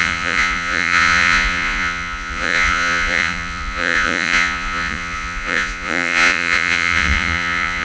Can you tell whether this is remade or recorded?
remade